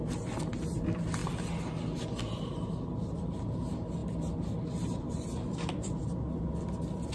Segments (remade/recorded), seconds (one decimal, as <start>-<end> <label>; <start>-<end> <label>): 0.0-7.1 recorded